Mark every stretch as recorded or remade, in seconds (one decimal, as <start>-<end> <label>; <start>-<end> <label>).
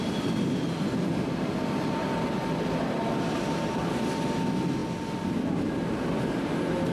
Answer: 0.0-6.9 recorded